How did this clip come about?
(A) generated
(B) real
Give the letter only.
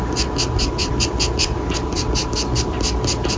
B